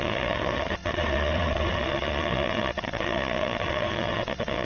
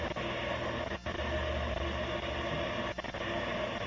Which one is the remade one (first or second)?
first